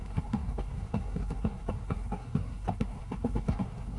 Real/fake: fake